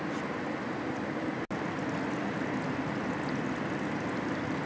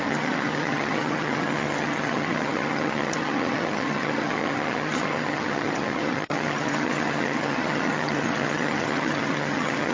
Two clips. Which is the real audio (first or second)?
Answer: first